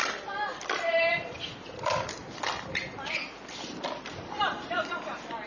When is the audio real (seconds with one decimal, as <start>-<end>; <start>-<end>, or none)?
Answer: 1.4-2.2